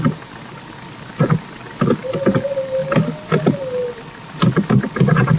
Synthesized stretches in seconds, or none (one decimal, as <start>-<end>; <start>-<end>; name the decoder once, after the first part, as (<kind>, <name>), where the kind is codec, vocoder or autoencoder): none